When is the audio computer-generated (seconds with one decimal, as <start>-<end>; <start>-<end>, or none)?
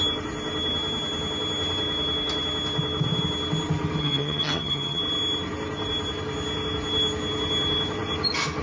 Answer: 4.0-5.0